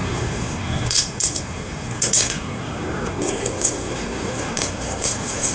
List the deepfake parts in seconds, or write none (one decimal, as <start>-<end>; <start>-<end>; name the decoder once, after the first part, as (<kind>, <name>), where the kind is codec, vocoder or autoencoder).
0.0-5.5 (codec, SNAC)